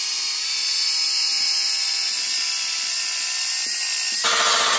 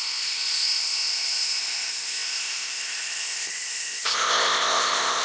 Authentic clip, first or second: first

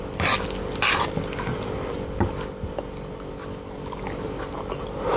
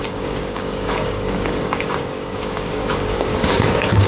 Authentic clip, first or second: first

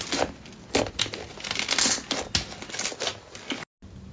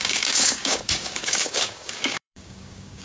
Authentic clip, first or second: first